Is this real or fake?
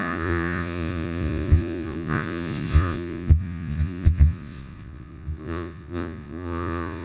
fake